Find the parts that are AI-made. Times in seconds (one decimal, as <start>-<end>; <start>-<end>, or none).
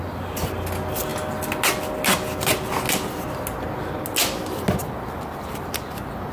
none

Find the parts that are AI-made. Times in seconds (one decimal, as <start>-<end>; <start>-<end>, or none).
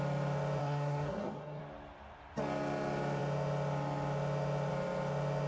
0.6-1.6